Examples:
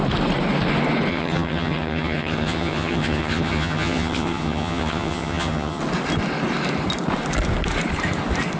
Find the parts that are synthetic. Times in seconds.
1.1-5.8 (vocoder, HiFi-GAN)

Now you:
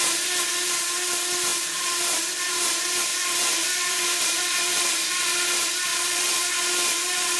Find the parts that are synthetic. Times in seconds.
1.5-2.2 (vocoder, BigVGAN v2); 3.1-5.1; 5.9-6.5

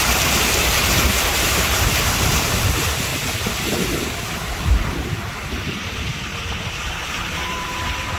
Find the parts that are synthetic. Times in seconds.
0.0-8.2 (vocoder, BigVGAN v2)

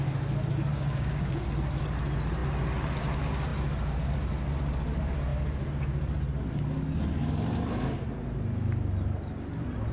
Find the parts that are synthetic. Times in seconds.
0.7-1.4 (codec, DAC)

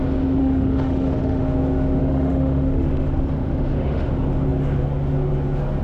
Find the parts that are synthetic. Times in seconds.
0.4-1.4 (autoencoder, DAC-VAE); 2.0-4.1

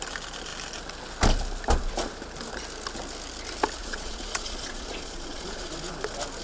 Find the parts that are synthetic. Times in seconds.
3.8-5.7 (vocoder, Vocos)

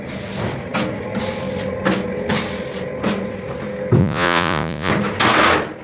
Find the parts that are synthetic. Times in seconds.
4.0-4.9 (vocoder, Vocos)

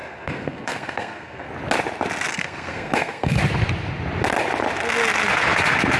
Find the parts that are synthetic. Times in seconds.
0.0-1.5 (codec, SNAC); 2.3-3.4